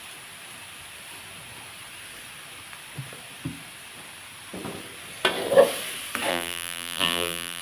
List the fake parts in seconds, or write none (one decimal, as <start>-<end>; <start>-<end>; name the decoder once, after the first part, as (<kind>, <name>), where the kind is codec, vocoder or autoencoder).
6.3-7.6 (vocoder, BigVGAN v2)